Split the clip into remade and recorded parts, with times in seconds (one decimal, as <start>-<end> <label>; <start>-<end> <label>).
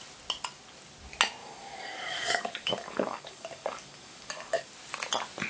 0.0-1.4 recorded; 1.4-4.7 remade; 4.7-5.5 recorded